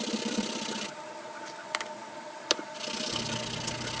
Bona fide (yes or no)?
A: yes